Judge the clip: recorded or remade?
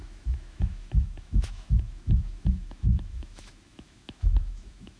remade